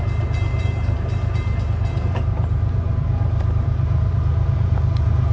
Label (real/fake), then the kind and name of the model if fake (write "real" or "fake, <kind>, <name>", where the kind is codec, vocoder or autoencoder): fake, vocoder, BigVGAN v2